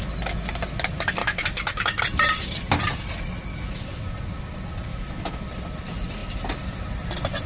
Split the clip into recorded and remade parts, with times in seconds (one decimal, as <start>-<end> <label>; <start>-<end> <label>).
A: 0.0-1.2 recorded; 1.2-2.0 remade; 2.0-3.5 recorded; 3.5-4.0 remade; 4.0-4.9 recorded; 4.9-5.4 remade; 5.4-7.5 recorded

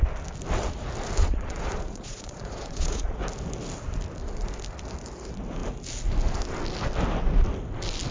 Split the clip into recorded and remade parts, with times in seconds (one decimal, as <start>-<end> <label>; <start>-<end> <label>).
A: 0.0-1.2 recorded; 1.2-3.2 remade; 3.2-8.1 recorded

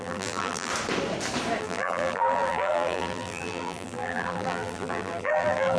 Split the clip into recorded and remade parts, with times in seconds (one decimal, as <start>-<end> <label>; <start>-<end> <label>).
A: 0.0-0.7 remade; 0.7-1.6 recorded; 1.6-5.8 remade

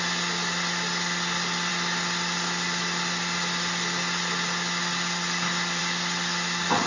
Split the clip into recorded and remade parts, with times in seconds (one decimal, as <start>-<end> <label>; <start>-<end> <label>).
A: 0.0-6.9 recorded

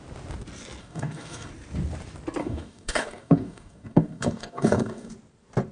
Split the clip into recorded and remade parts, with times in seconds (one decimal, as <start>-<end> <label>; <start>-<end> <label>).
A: 0.0-0.8 recorded; 0.8-1.5 remade; 1.5-2.4 recorded; 2.4-5.1 remade; 5.1-5.7 recorded

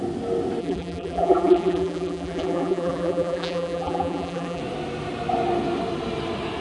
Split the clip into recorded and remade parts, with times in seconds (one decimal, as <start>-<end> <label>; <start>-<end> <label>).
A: 0.0-0.6 recorded; 0.6-4.6 remade; 4.6-6.6 recorded